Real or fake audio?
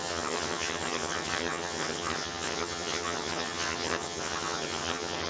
fake